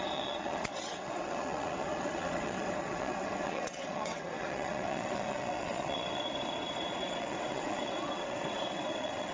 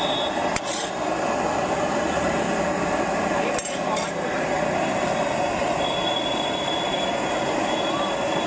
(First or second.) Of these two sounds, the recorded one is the second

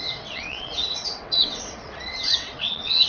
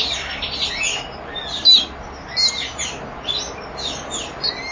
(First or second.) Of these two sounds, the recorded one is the second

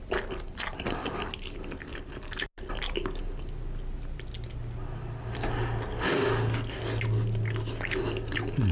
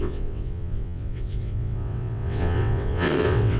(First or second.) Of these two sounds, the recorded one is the first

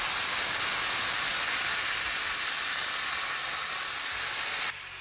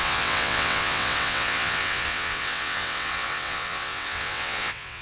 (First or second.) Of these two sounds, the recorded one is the first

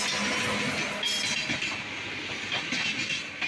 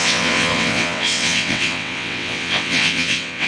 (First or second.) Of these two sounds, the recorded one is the first